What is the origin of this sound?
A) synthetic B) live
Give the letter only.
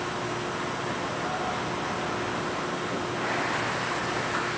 B